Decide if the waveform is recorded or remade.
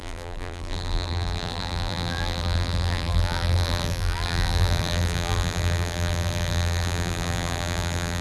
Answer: remade